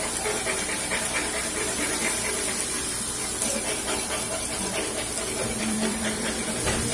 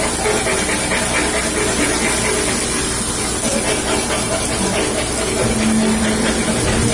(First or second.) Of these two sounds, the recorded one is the second